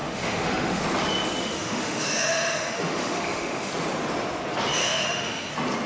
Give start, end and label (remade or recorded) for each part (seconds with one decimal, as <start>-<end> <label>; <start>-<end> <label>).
0.0-0.8 remade; 0.8-1.4 recorded; 1.4-3.7 remade; 3.7-4.8 recorded; 4.8-5.5 remade; 5.5-5.9 recorded

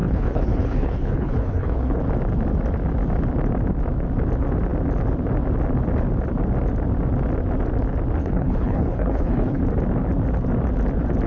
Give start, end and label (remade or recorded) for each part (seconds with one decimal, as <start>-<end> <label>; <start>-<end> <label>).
0.0-2.0 remade; 2.0-8.2 recorded; 8.2-9.6 remade; 9.6-11.3 recorded